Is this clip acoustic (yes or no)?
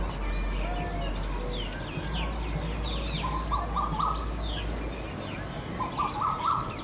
yes